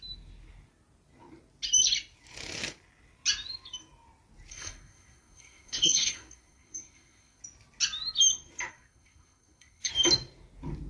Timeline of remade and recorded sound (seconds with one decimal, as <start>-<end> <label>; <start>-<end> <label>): 0.0-4.5 recorded; 4.5-7.4 remade; 7.4-8.7 recorded; 8.7-9.9 remade; 9.9-10.9 recorded